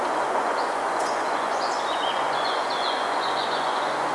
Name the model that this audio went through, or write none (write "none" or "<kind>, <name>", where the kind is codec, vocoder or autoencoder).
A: vocoder, Vocos